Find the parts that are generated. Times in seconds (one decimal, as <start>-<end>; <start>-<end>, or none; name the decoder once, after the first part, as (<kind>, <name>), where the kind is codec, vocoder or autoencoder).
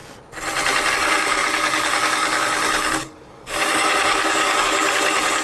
0.9-5.4 (codec, DAC)